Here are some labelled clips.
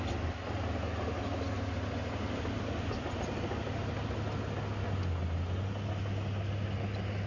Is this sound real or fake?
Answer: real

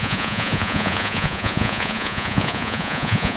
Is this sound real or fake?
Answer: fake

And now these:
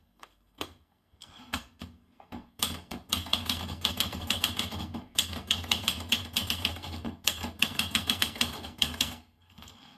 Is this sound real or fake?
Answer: fake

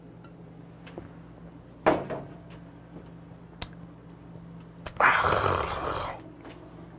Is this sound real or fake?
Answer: real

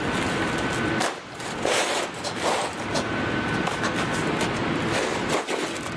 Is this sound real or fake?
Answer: real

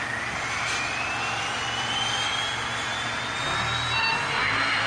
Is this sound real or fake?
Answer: real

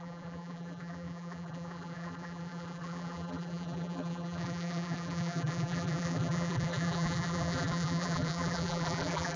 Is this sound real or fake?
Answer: fake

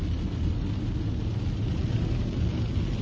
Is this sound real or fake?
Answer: real